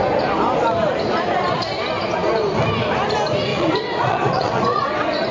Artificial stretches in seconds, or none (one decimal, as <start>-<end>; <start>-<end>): 3.5-5.3